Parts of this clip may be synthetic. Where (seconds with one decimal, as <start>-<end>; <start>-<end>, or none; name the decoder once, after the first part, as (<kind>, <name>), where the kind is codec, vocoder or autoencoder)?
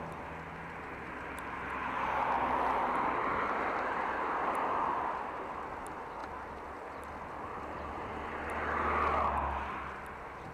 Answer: none